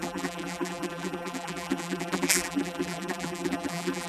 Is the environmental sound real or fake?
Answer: fake